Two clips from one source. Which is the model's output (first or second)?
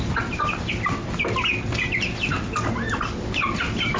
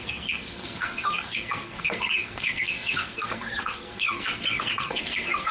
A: second